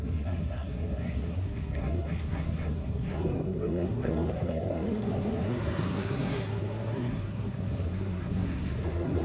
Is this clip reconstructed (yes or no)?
yes